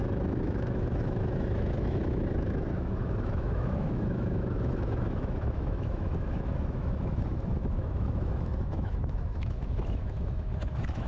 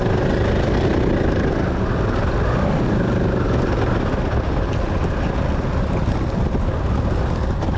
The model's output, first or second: first